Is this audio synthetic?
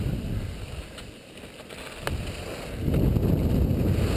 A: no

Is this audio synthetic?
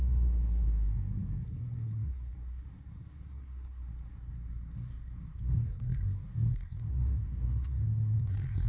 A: yes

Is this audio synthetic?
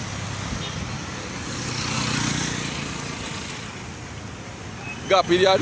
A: no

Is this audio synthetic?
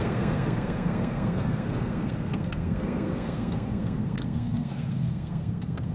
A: yes